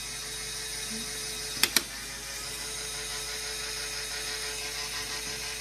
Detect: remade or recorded recorded